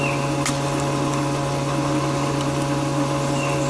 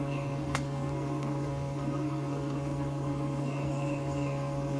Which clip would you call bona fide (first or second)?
first